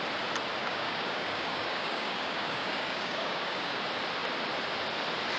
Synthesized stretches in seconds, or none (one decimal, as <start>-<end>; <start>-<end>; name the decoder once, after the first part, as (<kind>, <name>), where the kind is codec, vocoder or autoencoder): 0.6-3.8 (codec, DAC)